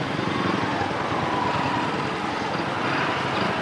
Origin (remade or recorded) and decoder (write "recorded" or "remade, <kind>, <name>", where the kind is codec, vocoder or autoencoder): recorded